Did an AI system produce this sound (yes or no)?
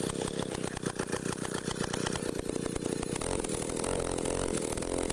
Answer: no